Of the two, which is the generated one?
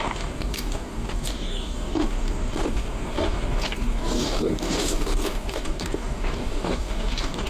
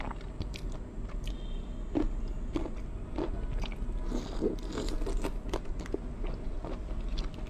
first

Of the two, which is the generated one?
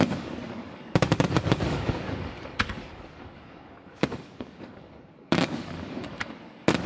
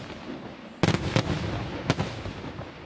first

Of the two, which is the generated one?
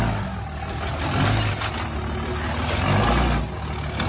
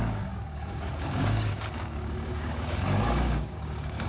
second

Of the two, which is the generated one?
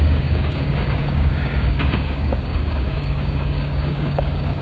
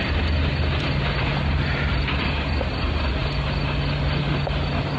first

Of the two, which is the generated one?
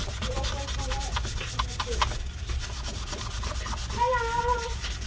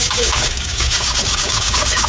second